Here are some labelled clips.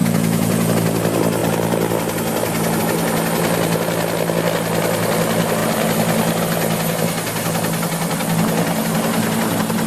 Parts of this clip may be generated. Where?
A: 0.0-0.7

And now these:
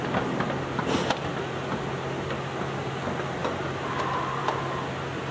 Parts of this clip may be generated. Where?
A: none

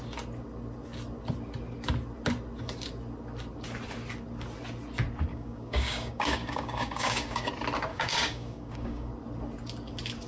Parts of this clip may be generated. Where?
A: 5.3-7.5; 7.9-9.1

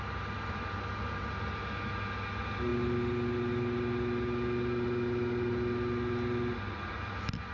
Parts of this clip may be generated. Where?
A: none